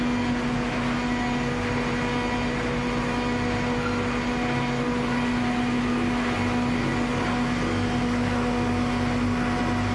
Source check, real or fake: real